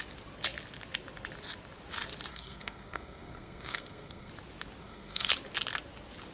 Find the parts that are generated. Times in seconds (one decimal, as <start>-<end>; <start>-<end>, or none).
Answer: 2.3-4.3; 4.8-5.3